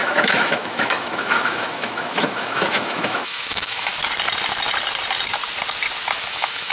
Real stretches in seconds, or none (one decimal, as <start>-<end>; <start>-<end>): 3.9-6.3